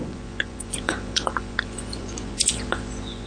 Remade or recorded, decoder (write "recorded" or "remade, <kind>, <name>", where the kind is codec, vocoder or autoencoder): remade, vocoder, Vocos